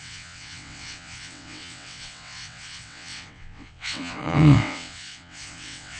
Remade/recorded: remade